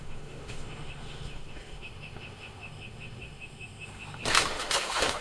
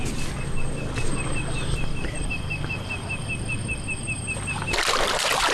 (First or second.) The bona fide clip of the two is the second